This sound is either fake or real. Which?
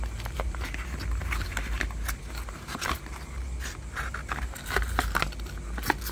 real